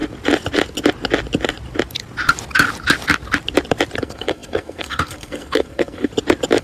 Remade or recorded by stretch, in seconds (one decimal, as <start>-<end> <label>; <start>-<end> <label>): 0.0-4.0 recorded; 4.0-6.1 remade; 6.1-6.6 recorded